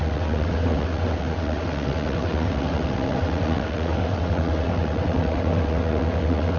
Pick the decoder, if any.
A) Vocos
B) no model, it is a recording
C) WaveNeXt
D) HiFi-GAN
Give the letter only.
C